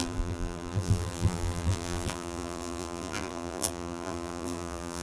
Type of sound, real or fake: fake